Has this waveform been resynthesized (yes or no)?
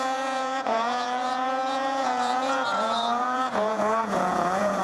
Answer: yes